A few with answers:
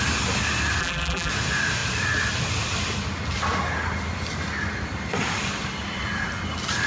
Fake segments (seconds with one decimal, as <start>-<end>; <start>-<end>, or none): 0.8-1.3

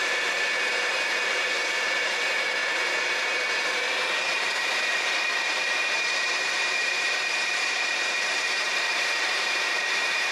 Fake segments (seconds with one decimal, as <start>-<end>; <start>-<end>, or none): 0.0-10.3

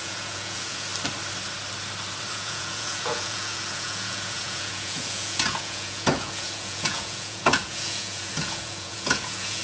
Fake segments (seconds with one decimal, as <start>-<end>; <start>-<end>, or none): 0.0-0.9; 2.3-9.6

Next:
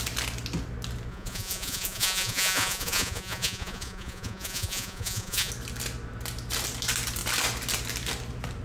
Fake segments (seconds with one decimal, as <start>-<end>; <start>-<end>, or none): 1.1-5.5

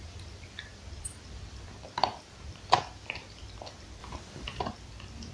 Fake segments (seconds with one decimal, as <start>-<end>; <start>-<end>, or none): 0.7-1.4; 4.0-4.6

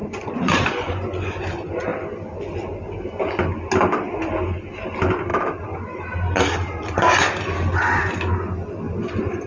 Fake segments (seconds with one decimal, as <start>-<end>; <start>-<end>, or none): 0.0-1.5